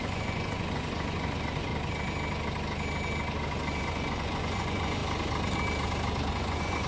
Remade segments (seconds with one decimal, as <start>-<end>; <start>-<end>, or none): 0.0-1.7; 3.8-5.0; 6.3-6.9